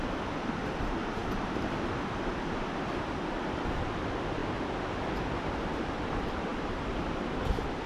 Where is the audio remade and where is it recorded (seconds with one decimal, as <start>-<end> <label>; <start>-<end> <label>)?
0.0-1.2 remade; 1.2-2.0 recorded; 2.0-4.4 remade; 4.4-5.7 recorded; 5.7-7.9 remade